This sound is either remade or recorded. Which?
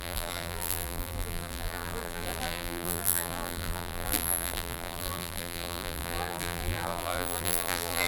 remade